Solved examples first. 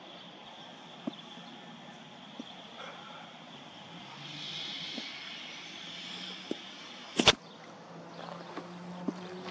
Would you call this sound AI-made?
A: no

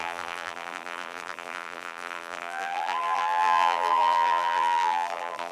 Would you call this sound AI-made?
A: yes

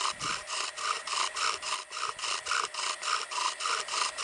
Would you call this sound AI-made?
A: no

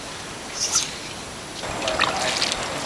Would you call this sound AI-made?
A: no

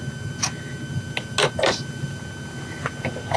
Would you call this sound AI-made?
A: no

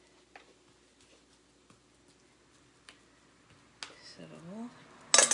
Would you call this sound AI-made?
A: no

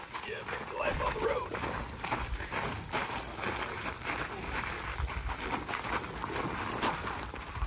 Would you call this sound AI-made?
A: yes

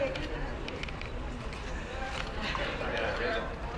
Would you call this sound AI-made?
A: yes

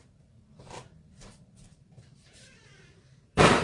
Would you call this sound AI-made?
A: yes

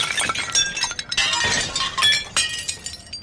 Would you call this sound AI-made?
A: no